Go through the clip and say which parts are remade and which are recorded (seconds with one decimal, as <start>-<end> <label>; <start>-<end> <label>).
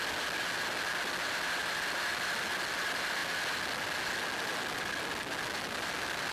0.0-6.3 recorded